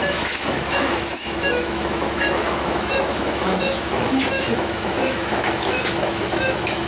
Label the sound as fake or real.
fake